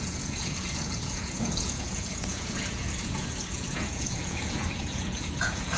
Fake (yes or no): yes